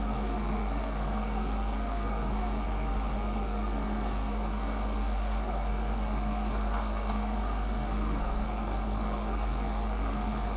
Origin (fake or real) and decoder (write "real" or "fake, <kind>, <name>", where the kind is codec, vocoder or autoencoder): fake, codec, SNAC